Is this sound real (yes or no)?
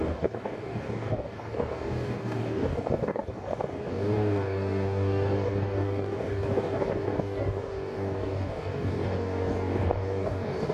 no